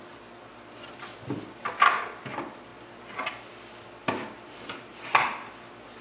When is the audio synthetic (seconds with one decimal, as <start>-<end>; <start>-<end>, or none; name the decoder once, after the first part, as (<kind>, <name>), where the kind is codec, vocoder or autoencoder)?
2.7-3.4 (vocoder, BigVGAN v2); 4.0-5.3